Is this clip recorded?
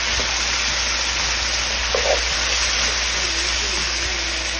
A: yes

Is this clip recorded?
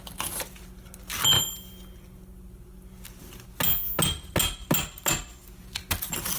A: yes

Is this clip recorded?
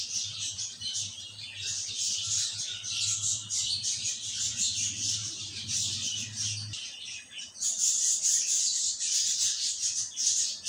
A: yes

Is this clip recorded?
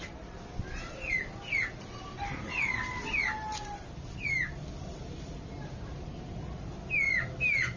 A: yes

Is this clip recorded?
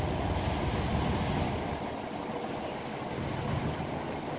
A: yes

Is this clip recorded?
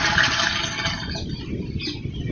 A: yes